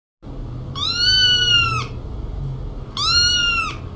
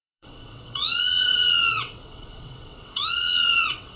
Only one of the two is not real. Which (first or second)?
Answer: second